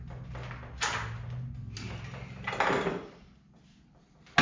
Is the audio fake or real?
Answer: real